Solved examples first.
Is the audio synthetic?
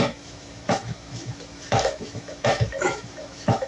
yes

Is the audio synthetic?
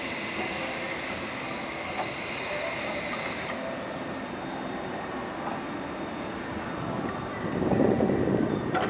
no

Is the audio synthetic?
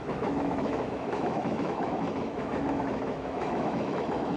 yes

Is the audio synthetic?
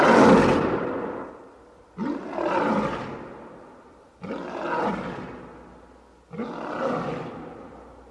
no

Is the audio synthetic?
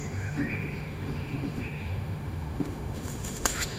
yes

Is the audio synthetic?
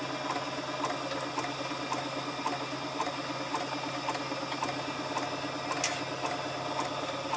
no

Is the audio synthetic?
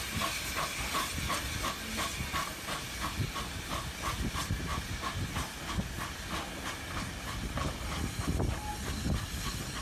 no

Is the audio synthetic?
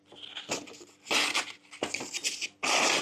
no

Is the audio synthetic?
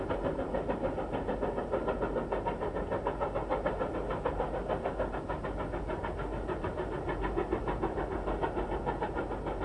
no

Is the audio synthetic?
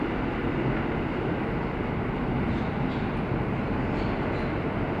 no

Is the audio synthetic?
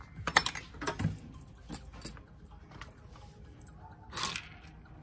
no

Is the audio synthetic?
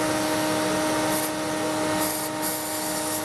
no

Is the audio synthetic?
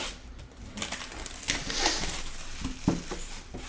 no